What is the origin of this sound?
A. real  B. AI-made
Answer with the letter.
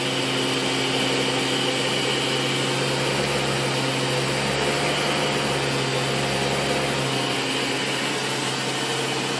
A